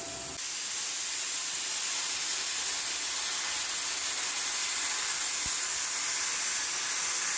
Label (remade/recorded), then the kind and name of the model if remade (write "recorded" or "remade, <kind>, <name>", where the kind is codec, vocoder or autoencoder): recorded